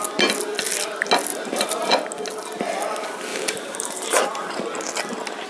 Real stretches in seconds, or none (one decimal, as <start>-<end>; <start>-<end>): 0.0-1.3; 1.9-3.3; 4.2-5.5